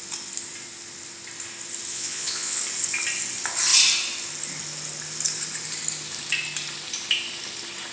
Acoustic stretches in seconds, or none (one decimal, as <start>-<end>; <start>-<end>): 0.0-1.9; 2.6-7.9